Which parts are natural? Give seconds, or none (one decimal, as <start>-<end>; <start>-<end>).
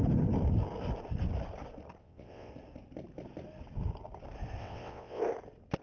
0.0-2.0; 2.5-4.6; 5.2-5.8